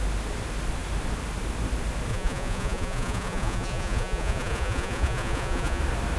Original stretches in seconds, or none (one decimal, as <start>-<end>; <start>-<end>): 0.0-2.1; 5.8-6.2